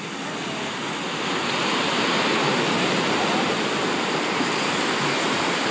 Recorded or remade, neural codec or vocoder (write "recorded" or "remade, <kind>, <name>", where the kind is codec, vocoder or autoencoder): recorded